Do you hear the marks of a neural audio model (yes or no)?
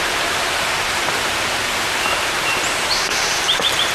yes